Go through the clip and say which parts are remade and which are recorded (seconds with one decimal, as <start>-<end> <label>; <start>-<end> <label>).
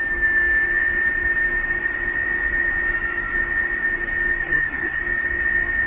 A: 0.0-4.4 recorded; 4.4-5.0 remade; 5.0-5.9 recorded